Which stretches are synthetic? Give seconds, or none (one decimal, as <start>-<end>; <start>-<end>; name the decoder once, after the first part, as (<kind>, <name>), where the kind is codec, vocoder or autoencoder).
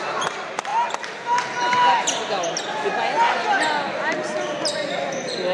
0.0-0.7 (vocoder, BigVGAN v2); 4.0-5.5